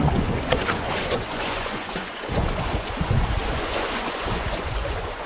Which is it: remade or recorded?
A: remade